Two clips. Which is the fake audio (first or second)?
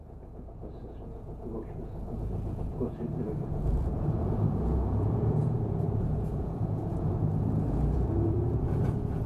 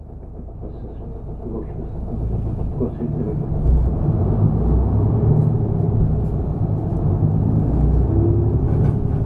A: first